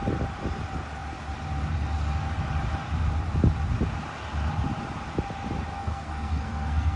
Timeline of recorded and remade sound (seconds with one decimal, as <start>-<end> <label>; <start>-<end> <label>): 0.0-5.7 recorded; 5.7-7.0 remade